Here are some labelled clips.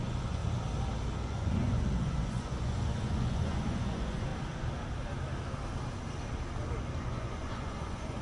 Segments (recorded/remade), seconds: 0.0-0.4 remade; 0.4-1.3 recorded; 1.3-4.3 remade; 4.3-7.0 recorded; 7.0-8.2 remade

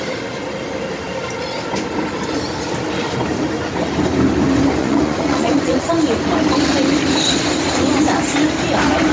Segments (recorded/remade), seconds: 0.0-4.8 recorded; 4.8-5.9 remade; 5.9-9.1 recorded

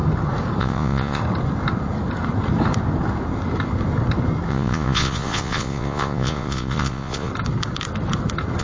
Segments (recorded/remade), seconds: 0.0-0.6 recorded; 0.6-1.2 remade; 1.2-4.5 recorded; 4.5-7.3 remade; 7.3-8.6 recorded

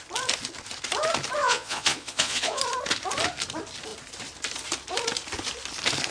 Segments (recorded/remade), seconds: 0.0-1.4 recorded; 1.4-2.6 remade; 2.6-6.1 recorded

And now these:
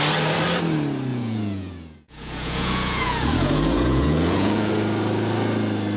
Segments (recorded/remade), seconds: 0.0-1.1 recorded; 1.1-4.7 remade; 4.7-6.0 recorded

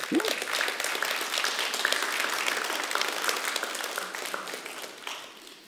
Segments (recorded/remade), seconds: 0.0-5.7 recorded

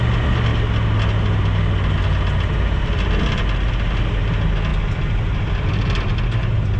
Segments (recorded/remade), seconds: 0.0-6.8 recorded

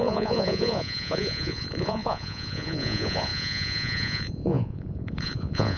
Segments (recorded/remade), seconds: 0.0-5.8 remade